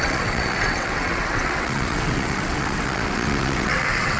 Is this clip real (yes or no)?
no